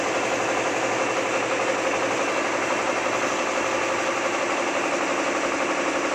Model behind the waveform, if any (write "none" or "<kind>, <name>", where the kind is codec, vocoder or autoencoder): none